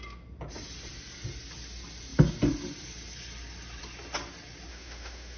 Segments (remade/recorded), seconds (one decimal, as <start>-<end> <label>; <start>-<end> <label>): 0.0-4.7 recorded; 4.7-5.4 remade

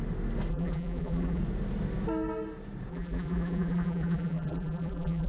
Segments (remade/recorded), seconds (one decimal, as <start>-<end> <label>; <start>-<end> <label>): 0.0-0.5 recorded; 0.5-1.4 remade; 1.4-2.9 recorded; 2.9-5.3 remade